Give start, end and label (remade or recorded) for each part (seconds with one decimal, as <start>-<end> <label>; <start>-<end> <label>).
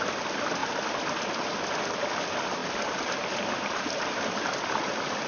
0.0-5.3 recorded